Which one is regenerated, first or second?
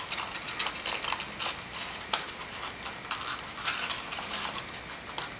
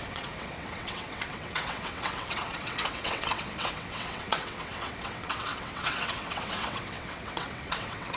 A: second